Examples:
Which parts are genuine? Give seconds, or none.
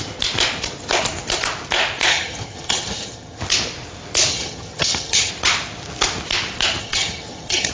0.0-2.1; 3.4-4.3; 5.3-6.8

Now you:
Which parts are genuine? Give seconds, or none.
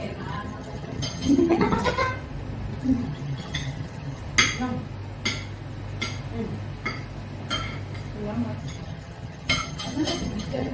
2.1-2.8; 4.2-8.6